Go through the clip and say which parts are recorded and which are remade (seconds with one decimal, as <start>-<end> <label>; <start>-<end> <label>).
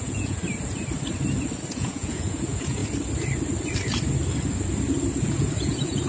0.0-0.4 remade; 0.4-1.7 recorded; 1.7-2.8 remade; 2.8-5.2 recorded; 5.2-6.1 remade